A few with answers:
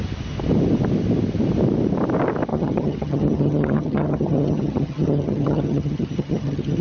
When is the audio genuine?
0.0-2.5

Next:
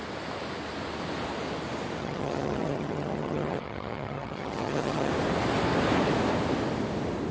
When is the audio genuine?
0.0-2.0; 5.1-7.3

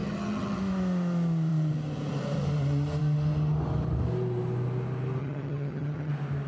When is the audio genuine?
0.6-5.2; 6.1-6.5

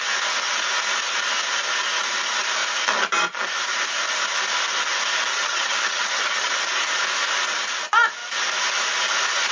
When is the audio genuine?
0.0-5.3; 6.5-9.5

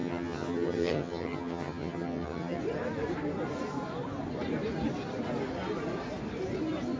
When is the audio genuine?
2.6-7.0

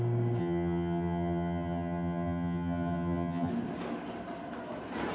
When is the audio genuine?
0.0-0.4; 3.5-5.1